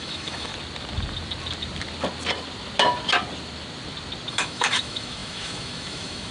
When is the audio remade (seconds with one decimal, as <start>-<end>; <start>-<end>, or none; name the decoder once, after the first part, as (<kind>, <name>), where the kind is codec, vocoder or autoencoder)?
0.0-0.5 (autoencoder, DAC-VAE); 4.3-6.3